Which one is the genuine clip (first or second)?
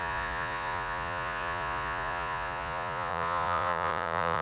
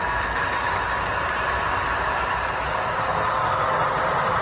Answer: second